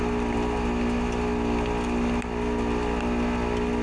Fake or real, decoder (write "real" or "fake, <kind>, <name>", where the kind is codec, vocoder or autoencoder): real